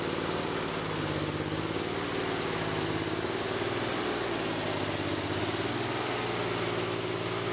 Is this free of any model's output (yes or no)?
yes